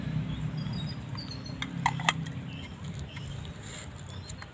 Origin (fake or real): real